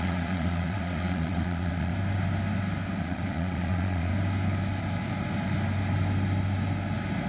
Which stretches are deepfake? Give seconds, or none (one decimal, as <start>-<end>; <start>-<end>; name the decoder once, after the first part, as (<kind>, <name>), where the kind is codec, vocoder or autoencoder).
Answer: 0.0-1.9 (vocoder, Vocos); 3.0-4.1